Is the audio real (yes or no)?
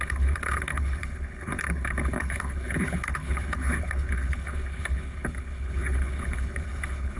no